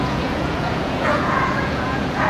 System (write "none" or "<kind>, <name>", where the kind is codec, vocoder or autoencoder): vocoder, Vocos